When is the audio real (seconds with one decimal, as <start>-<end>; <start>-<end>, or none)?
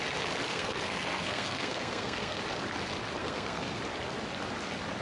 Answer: 0.0-0.5; 2.4-3.2; 3.8-5.0